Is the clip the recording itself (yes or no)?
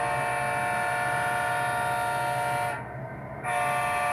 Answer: yes